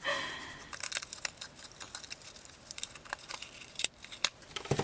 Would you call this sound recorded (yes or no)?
yes